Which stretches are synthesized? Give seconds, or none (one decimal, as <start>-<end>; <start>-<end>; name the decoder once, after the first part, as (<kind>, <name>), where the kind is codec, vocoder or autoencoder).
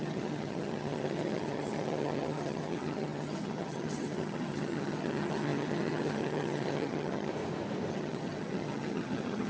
0.0-7.3 (vocoder, HiFi-GAN); 7.9-9.5